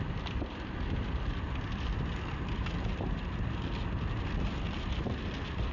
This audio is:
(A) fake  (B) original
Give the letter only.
B